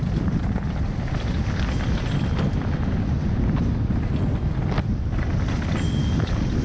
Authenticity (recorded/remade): recorded